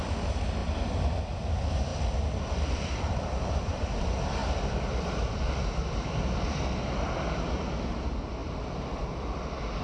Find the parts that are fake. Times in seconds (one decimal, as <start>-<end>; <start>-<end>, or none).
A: 0.6-1.2; 1.9-3.7; 4.4-6.8; 8.4-9.4